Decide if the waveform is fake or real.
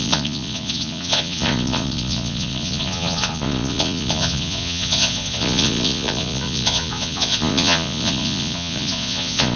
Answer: fake